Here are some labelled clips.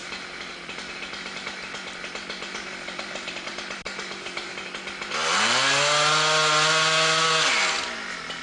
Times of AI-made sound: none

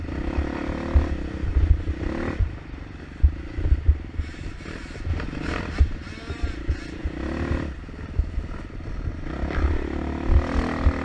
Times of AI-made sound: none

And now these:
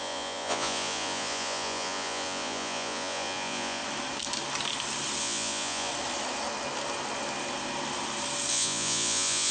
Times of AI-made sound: 0.0-3.8 (vocoder, Vocos); 5.2-5.9; 8.5-9.5

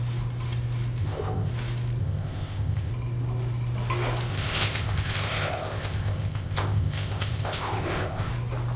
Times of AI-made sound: 1.0-1.5 (codec, ZipCodec); 2.0-2.9; 4.3-8.3